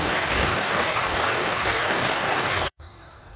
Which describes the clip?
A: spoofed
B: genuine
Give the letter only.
A